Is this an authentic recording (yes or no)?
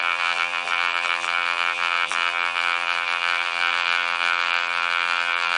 no